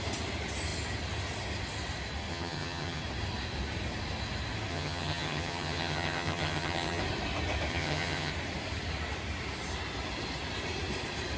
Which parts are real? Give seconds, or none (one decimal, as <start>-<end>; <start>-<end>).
0.0-2.3; 3.0-4.7; 7.0-7.7; 8.3-11.4